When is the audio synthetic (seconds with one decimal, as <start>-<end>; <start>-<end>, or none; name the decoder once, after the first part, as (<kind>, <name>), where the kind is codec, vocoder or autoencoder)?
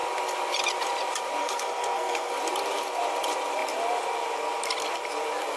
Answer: 1.4-2.3 (codec, SNAC)